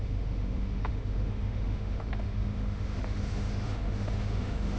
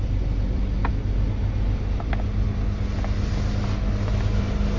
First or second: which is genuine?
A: second